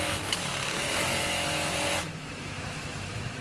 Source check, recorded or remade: remade